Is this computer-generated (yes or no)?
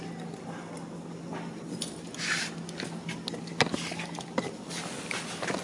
no